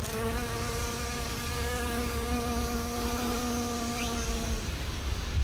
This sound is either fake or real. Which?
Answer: fake